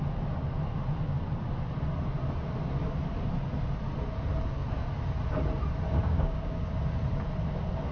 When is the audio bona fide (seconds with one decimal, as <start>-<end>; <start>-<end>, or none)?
0.0-5.9; 6.6-7.9